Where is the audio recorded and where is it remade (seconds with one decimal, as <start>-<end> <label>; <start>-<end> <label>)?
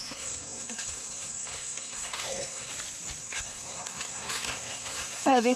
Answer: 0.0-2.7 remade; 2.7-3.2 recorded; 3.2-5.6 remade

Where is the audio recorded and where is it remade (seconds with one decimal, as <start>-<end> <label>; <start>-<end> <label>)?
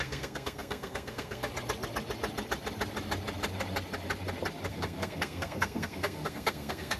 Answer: 0.0-1.5 remade; 1.5-4.7 recorded; 4.7-7.0 remade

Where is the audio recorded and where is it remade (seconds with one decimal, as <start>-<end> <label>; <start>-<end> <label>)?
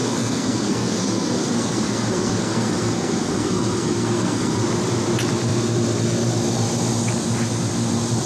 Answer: 0.0-4.6 remade; 4.6-8.3 recorded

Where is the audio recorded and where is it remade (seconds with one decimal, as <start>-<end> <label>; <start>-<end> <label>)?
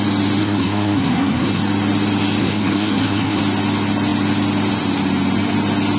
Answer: 0.0-0.4 recorded; 0.4-1.6 remade; 1.6-2.4 recorded; 2.4-3.4 remade; 3.4-6.0 recorded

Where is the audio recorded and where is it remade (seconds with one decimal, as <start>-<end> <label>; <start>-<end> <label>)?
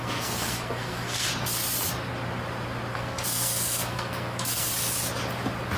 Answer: 0.0-1.3 remade; 1.3-2.9 recorded; 2.9-4.7 remade; 4.7-5.8 recorded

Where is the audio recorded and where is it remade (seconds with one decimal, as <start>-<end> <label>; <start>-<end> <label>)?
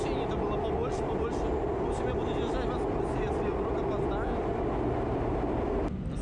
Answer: 0.0-6.2 recorded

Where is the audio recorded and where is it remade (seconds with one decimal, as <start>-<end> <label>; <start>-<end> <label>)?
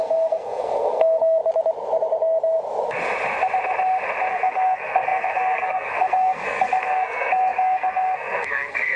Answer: 0.0-1.4 remade; 1.4-4.3 recorded; 4.3-9.0 remade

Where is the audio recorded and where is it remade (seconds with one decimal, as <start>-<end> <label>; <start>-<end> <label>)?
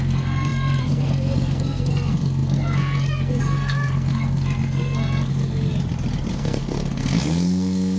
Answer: 0.0-5.7 remade; 5.7-6.3 recorded; 6.3-8.0 remade